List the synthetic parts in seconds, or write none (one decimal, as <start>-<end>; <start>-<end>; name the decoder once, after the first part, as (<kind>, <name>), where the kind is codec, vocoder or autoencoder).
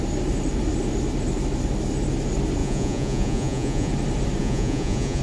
2.6-3.9 (vocoder, Vocos); 4.4-5.2